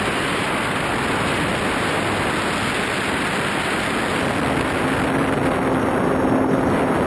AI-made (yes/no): no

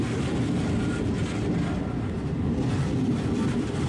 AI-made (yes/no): no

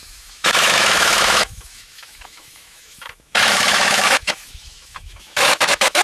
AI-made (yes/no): yes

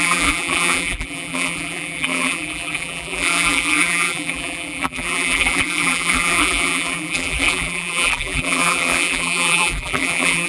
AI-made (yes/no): yes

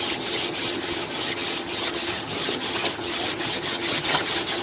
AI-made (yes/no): yes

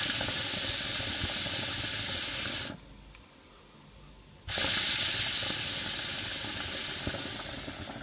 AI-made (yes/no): no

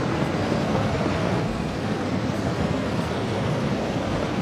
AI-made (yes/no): yes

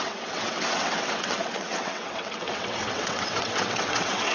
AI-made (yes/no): yes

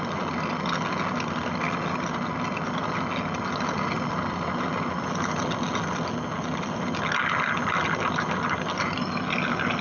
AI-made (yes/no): no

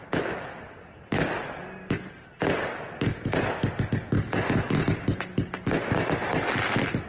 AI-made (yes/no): no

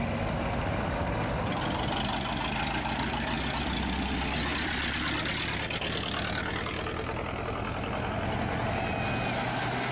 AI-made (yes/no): no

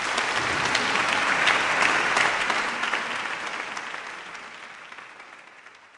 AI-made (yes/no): no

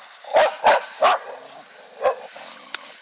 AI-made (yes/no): no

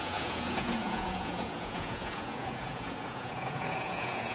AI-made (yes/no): yes